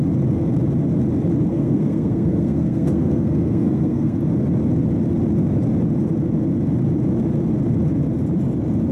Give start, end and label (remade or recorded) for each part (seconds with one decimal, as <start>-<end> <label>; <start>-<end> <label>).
0.0-1.5 recorded; 1.5-4.2 remade; 4.2-8.9 recorded